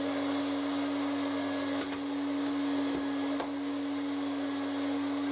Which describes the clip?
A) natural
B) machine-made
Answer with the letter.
A